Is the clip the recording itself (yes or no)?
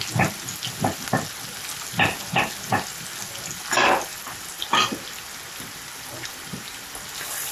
yes